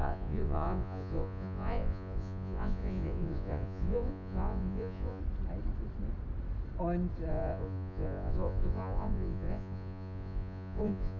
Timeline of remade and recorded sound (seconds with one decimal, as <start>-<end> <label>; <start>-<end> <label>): 0.0-5.2 remade; 5.2-7.3 recorded; 7.3-11.2 remade

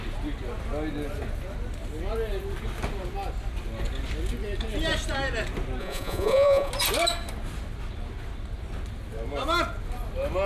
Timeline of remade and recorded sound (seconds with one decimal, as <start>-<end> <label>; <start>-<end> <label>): 0.0-5.8 recorded; 5.8-6.7 remade; 6.7-10.5 recorded

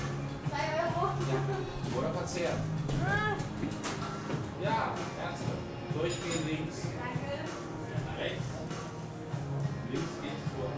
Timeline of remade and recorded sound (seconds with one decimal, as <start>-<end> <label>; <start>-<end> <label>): 0.0-10.8 recorded

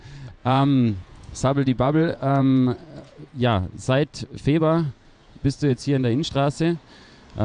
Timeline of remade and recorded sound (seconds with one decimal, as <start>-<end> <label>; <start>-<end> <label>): 0.0-0.4 recorded; 0.4-3.3 remade; 3.3-5.2 recorded; 5.2-6.3 remade; 6.3-7.4 recorded

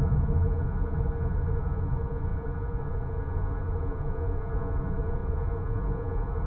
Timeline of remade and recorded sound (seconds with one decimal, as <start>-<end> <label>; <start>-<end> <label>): 0.0-6.5 remade

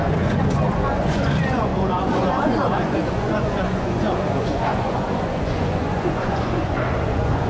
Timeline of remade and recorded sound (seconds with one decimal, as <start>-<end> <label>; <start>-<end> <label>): 0.0-7.5 remade